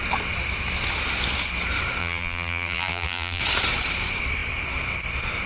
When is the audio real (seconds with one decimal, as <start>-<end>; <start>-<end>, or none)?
0.0-2.0; 3.4-5.5